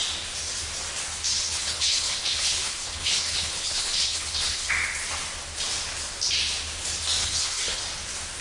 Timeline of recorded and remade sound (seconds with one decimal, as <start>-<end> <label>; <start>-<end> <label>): 0.0-1.3 recorded; 1.3-4.7 remade; 4.7-7.2 recorded; 7.2-7.8 remade; 7.8-8.4 recorded